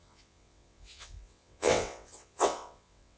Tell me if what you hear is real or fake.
fake